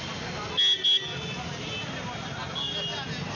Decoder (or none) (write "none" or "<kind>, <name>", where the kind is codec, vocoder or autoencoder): none